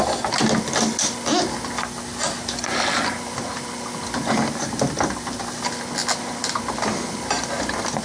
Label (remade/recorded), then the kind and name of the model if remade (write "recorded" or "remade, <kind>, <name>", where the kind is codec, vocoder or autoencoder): recorded